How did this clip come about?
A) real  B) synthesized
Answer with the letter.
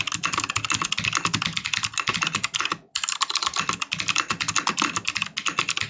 A